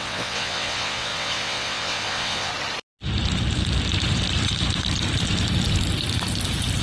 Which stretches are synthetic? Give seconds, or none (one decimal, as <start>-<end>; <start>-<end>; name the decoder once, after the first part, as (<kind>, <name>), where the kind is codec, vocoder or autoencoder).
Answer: 0.0-2.5 (vocoder, WaveNeXt)